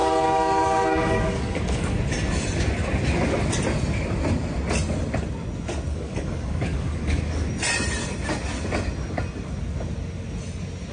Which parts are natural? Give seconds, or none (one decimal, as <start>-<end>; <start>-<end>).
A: 2.0-5.9; 7.5-10.9